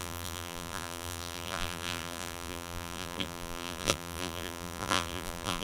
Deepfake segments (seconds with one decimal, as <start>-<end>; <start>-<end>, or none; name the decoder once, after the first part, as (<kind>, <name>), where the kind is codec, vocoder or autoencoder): 0.0-5.6 (vocoder, BigVGAN v2)